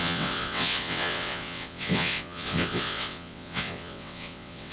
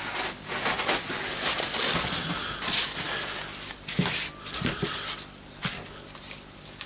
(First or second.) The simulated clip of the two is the first